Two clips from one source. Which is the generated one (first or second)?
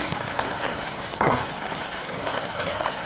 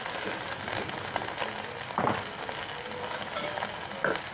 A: first